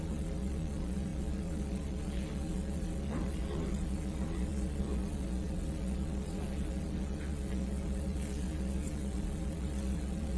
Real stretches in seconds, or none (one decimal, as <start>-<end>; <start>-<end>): none